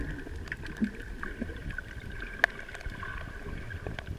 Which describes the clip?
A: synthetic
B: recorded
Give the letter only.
B